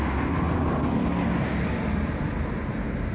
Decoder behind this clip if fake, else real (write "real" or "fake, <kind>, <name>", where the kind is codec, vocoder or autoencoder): real